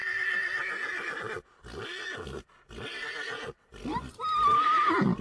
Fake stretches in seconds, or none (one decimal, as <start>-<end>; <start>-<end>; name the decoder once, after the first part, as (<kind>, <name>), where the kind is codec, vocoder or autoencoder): 3.9-4.8 (vocoder, BigVGAN v2)